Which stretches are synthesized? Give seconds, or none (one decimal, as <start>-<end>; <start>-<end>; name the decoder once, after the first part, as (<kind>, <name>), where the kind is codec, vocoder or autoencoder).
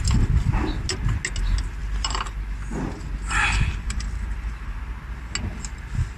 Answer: 1.8-4.8 (vocoder, BigVGAN v2)